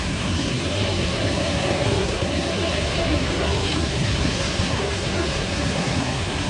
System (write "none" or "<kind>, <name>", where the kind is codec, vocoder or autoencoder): codec, SNAC